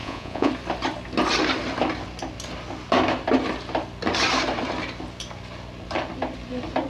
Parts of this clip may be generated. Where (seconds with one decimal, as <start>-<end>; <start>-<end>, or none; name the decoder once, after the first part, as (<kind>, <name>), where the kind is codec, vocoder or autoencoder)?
0.0-0.5 (vocoder, Vocos)